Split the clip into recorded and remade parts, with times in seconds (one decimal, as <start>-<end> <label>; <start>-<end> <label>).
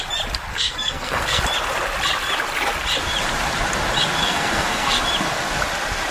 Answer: 0.0-0.5 recorded; 0.5-1.4 remade; 1.4-4.2 recorded; 4.2-5.0 remade; 5.0-6.1 recorded